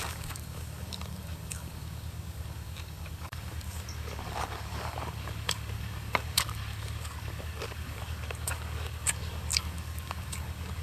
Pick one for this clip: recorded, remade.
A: remade